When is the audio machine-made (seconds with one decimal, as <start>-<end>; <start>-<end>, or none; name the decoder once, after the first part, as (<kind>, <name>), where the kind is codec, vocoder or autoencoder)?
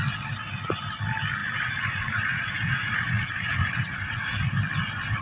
1.4-4.5 (vocoder, Vocos)